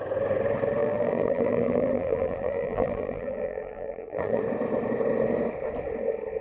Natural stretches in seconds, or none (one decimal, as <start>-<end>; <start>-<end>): 0.0-0.8; 4.4-6.4